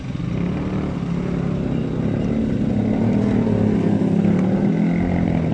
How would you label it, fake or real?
real